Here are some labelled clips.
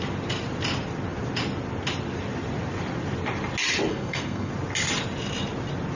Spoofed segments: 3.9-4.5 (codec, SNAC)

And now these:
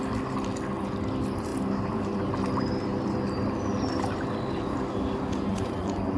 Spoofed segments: 5.5-6.2 (vocoder, Vocos)

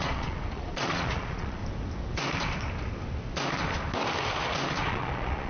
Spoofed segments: 0.0-1.6 (vocoder, Vocos); 4.9-5.5

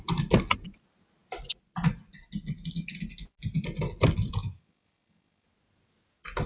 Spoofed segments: none

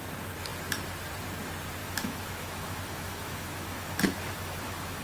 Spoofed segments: 1.8-5.0 (autoencoder, DAC-VAE)